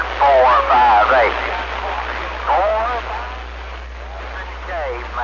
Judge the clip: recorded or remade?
recorded